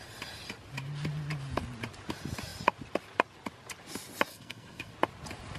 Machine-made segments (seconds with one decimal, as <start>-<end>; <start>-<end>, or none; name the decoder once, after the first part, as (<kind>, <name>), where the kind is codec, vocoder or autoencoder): 4.3-4.9 (codec, SNAC)